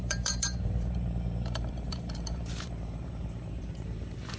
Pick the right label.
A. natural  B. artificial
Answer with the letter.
B